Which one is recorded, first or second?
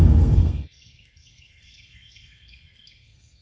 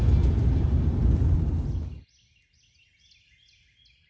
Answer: second